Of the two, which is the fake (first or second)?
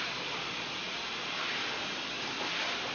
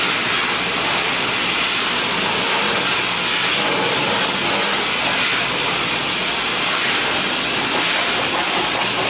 first